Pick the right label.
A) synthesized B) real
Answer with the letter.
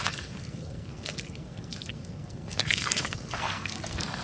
A